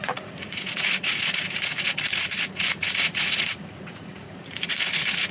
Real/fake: fake